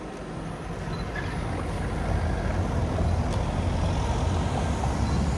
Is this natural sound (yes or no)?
yes